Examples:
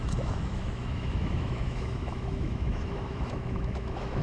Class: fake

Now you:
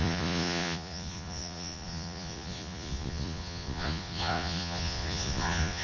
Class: fake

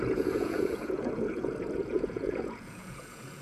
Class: fake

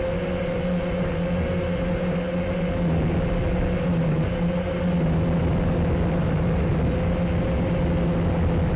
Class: real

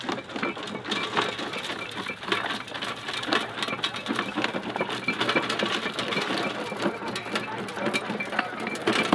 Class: real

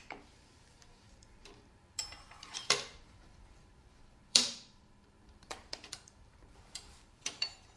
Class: fake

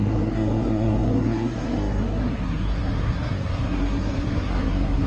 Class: fake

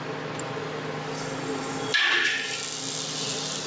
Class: real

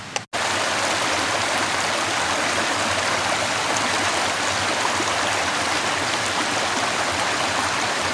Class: real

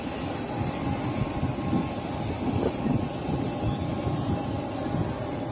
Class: real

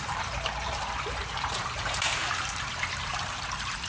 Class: fake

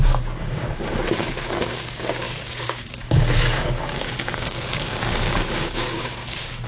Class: fake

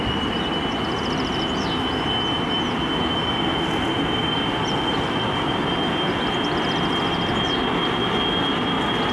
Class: real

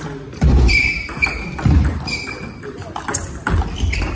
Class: real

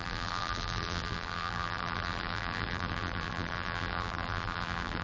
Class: fake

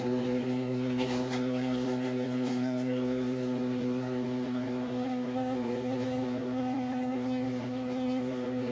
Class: fake